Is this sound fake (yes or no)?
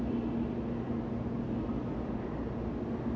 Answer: no